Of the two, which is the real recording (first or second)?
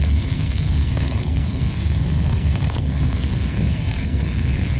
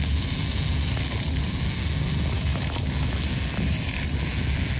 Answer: second